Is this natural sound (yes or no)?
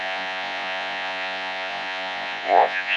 no